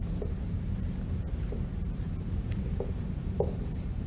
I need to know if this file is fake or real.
fake